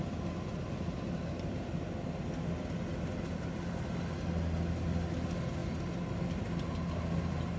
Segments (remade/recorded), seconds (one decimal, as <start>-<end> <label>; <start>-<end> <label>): 0.0-7.6 recorded